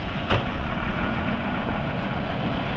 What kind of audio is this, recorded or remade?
remade